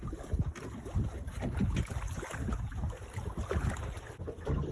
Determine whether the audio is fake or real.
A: real